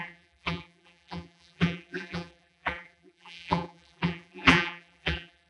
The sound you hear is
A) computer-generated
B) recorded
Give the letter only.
A